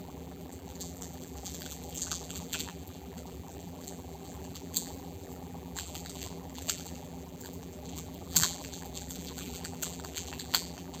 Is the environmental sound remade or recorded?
remade